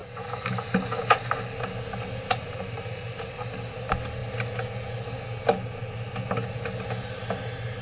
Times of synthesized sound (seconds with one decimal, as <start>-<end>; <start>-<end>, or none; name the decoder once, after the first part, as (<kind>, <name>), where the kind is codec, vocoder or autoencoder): none